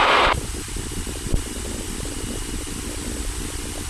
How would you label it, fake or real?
fake